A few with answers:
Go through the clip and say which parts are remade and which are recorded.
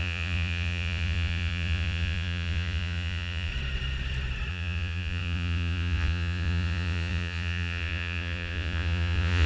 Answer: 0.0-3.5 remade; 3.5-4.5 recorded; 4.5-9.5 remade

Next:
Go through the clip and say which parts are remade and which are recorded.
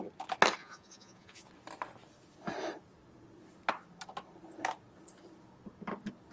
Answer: 0.0-0.6 recorded; 0.6-1.5 remade; 1.5-6.3 recorded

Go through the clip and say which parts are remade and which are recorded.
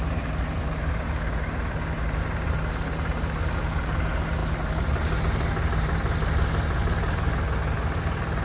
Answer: 0.0-8.4 recorded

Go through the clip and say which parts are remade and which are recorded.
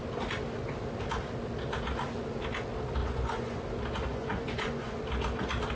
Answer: 0.0-3.0 recorded; 3.0-3.6 remade; 3.6-4.1 recorded; 4.1-5.0 remade; 5.0-5.8 recorded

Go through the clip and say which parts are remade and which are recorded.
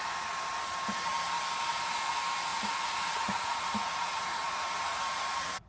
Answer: 0.0-2.5 recorded; 2.5-5.7 remade